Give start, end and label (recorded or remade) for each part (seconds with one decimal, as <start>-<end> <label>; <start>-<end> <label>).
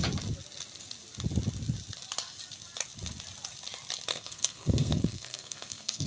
0.0-4.1 recorded; 4.1-6.1 remade